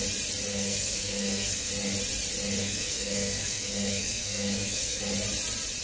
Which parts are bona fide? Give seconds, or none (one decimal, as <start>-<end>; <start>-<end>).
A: 0.0-0.5; 1.7-2.6; 5.0-5.8